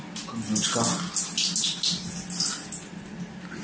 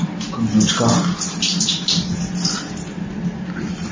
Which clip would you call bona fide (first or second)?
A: first